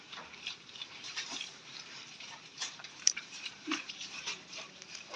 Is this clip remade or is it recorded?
remade